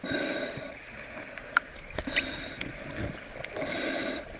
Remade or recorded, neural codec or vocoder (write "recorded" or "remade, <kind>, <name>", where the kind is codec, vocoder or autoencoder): recorded